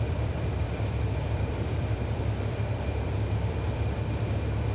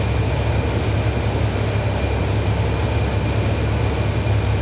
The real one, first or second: second